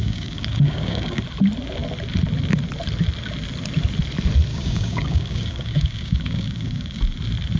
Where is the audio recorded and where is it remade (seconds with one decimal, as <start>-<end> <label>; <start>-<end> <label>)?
0.0-1.2 remade; 1.2-4.5 recorded; 4.5-7.0 remade; 7.0-7.6 recorded